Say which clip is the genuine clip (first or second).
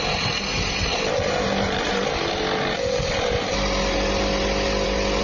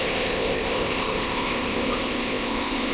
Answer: first